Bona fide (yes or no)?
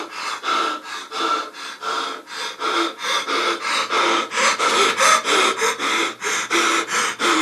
yes